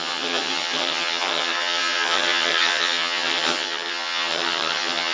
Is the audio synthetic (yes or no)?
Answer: yes